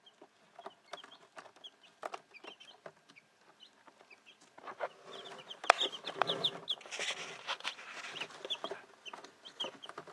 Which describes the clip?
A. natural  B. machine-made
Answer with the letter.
A